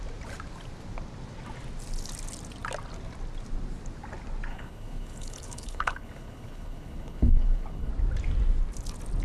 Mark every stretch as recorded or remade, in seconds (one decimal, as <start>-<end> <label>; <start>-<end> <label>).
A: 0.0-4.5 recorded; 4.5-7.9 remade; 7.9-9.2 recorded